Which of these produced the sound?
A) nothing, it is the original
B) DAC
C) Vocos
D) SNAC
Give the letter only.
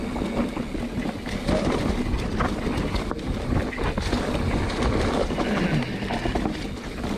A